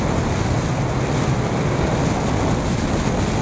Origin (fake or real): real